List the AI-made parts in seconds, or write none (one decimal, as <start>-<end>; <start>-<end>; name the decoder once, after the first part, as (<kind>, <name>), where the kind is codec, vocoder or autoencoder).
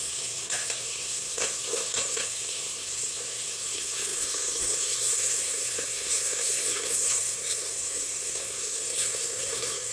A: 0.0-9.9 (codec, SNAC)